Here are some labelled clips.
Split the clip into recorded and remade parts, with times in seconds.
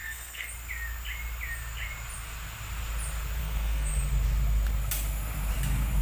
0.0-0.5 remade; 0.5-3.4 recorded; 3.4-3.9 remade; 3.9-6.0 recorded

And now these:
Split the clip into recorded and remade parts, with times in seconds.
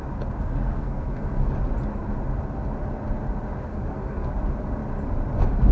0.0-0.4 recorded; 0.4-1.6 remade; 1.6-3.7 recorded; 3.7-4.3 remade; 4.3-5.7 recorded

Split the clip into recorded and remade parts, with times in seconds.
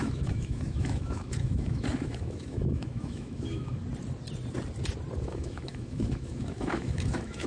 0.0-3.8 remade; 3.8-5.2 recorded; 5.2-7.5 remade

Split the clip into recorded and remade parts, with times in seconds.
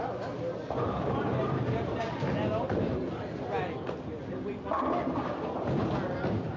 0.0-1.4 recorded; 1.4-2.0 remade; 2.0-6.6 recorded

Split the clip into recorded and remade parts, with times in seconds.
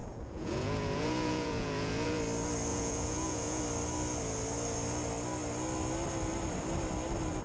0.0-2.2 remade; 2.2-2.7 recorded; 2.7-3.6 remade; 3.6-7.4 recorded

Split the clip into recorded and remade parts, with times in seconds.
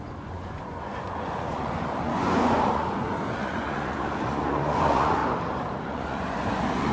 0.0-5.2 remade; 5.2-5.8 recorded; 5.8-6.9 remade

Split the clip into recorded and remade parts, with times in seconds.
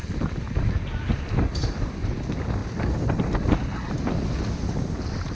0.0-5.3 recorded